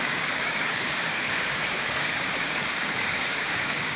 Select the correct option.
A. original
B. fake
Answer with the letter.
B